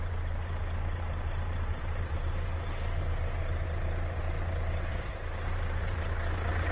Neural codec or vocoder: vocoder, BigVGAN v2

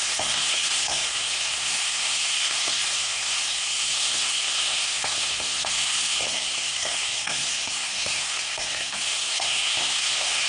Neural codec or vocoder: codec, SNAC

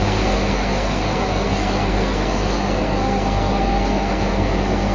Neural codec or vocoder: codec, SNAC